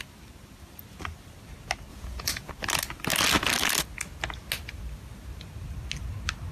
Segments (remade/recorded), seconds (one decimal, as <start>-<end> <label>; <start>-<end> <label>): 0.0-1.9 recorded; 1.9-2.5 remade; 2.5-6.5 recorded